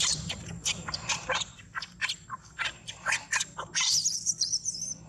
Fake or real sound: fake